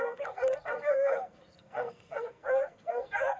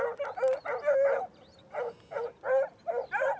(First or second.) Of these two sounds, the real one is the second